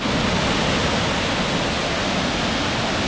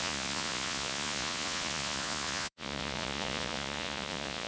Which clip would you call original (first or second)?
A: first